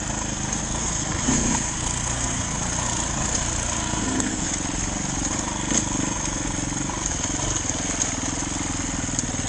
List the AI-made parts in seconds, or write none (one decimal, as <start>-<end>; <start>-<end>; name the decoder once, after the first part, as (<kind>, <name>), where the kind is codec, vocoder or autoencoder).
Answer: 0.8-2.6 (codec, SNAC); 3.8-4.5